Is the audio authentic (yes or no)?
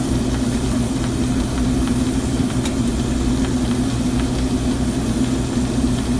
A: yes